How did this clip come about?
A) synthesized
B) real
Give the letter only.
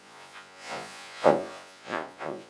A